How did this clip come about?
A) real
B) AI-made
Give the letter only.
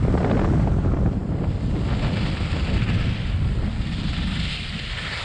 A